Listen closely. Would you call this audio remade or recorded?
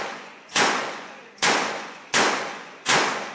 remade